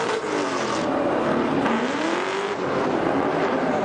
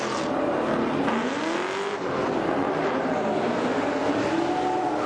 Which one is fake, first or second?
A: first